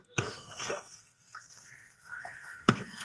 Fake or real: fake